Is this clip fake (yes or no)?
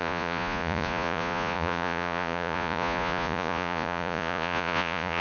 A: yes